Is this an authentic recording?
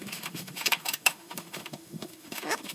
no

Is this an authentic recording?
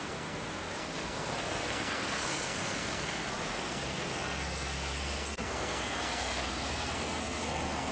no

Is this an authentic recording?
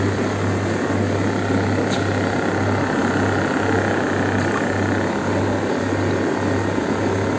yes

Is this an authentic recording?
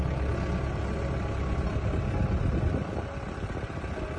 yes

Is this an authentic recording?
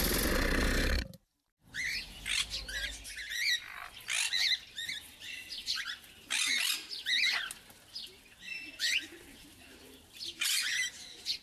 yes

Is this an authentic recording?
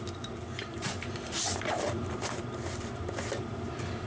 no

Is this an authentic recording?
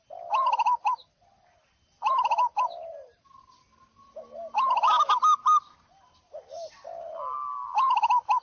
yes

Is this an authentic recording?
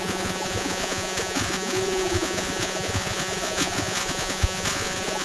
no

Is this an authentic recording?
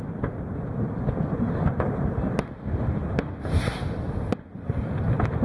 yes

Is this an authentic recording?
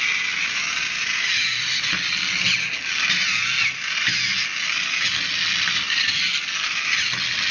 yes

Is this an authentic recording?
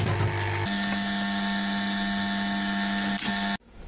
yes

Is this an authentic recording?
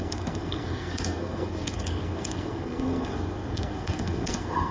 no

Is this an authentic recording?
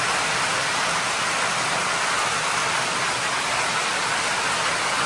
yes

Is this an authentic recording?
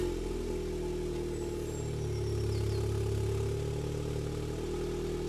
yes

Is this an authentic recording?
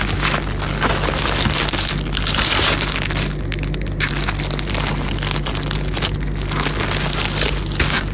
yes